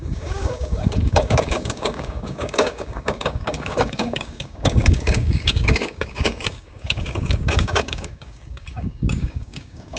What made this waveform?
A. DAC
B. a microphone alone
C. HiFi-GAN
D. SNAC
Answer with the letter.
A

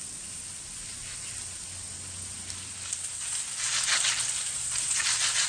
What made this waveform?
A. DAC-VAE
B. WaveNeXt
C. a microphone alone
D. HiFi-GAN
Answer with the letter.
C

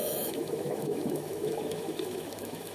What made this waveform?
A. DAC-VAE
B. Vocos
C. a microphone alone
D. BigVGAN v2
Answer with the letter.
A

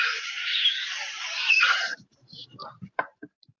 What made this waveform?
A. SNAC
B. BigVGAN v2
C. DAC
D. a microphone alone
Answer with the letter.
B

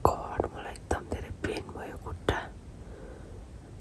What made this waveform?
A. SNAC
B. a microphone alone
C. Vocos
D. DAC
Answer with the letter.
B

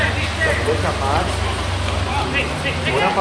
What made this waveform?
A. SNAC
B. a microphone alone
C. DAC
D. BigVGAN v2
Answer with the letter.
B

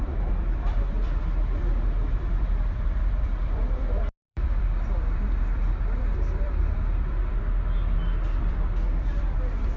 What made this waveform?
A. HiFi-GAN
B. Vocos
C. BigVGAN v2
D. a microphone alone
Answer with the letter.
C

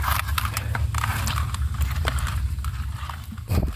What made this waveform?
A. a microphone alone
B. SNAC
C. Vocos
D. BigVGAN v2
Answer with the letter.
D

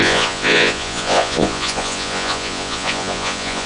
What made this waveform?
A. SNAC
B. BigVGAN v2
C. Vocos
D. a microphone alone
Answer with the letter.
C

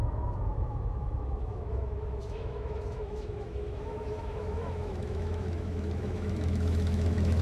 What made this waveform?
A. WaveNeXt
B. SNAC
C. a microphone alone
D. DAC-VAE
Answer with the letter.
D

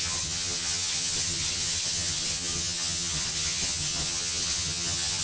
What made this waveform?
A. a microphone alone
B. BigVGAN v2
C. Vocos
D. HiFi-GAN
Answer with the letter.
D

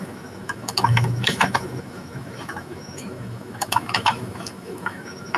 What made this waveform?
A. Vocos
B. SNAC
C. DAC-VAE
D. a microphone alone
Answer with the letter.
C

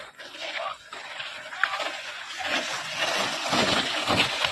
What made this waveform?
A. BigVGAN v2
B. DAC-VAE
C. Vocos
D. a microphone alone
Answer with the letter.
C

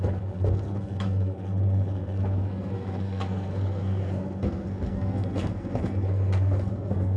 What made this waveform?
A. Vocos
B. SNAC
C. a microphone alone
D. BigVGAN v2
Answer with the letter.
B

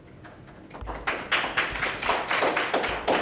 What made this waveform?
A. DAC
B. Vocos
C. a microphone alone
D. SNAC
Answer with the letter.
C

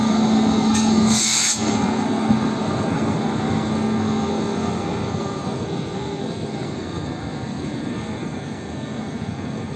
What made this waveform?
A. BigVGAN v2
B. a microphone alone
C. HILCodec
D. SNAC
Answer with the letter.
D